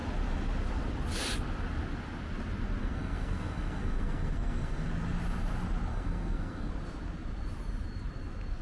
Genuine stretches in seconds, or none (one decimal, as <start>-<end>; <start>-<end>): 0.0-2.8; 4.9-5.9; 6.7-8.6